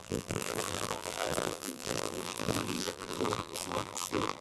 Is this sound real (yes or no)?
no